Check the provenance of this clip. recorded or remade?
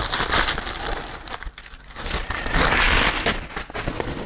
recorded